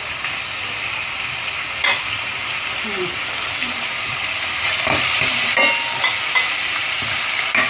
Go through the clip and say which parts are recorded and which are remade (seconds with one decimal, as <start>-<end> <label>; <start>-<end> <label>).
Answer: 0.0-2.4 recorded; 2.4-7.0 remade; 7.0-7.7 recorded